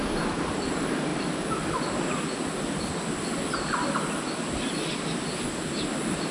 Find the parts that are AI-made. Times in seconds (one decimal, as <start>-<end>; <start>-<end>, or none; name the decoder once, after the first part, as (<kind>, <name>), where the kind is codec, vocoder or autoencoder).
none